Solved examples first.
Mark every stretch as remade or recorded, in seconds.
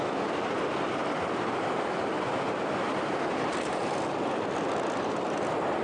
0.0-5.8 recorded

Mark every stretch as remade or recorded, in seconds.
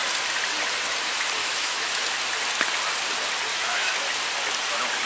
0.0-1.4 recorded; 1.4-1.9 remade; 1.9-3.5 recorded; 3.5-4.0 remade; 4.0-5.1 recorded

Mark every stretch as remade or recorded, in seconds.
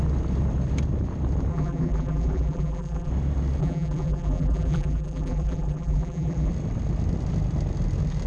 0.0-1.5 recorded; 1.5-3.1 remade; 3.1-3.6 recorded; 3.6-6.5 remade; 6.5-8.3 recorded